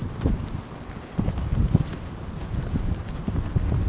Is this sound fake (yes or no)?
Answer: no